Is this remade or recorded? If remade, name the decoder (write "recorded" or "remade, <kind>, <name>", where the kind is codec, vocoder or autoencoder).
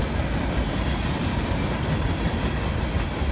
recorded